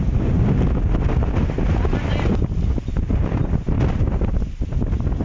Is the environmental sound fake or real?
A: real